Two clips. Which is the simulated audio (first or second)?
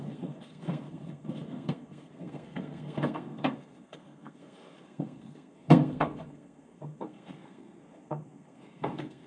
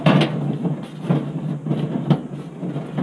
first